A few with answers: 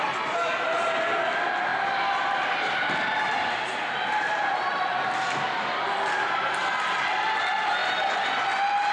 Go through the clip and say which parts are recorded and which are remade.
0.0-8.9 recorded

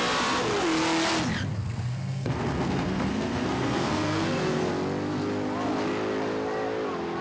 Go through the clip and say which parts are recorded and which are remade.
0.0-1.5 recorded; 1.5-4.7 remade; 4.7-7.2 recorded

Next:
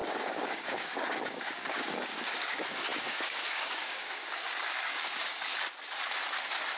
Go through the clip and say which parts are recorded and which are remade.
0.0-5.5 remade; 5.5-6.8 recorded

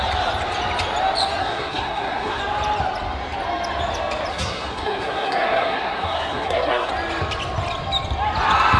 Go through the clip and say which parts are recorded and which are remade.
0.0-1.4 recorded; 1.4-2.4 remade; 2.4-4.3 recorded; 4.3-6.9 remade; 6.9-8.8 recorded